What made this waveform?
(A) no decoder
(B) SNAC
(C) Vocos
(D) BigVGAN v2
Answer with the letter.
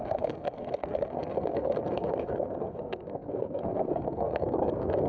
B